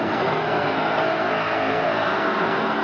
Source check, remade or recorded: remade